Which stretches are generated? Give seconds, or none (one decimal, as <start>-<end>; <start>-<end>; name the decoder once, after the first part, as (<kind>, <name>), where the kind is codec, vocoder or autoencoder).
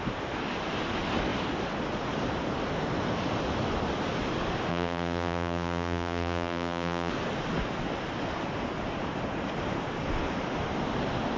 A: 4.7-7.1 (vocoder, BigVGAN v2)